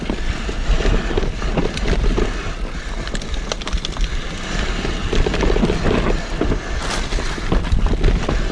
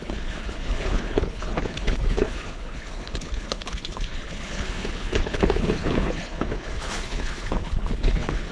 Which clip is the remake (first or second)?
second